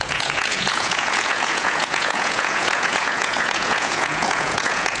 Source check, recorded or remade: remade